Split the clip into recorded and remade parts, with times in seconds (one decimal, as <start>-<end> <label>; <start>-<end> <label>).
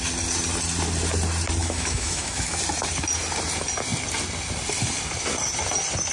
0.0-1.6 recorded; 1.6-2.6 remade; 2.6-6.1 recorded